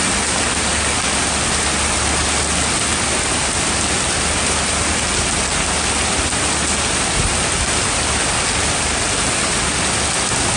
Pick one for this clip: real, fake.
real